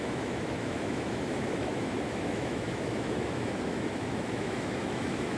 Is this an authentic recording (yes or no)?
no